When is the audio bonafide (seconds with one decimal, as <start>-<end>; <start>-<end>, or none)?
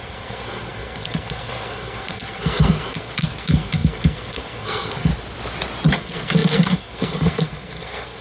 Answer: 5.1-5.9